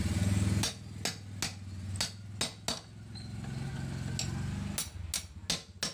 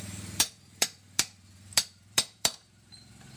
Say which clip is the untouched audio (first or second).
first